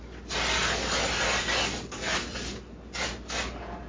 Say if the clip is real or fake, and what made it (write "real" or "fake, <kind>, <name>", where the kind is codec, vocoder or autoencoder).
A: real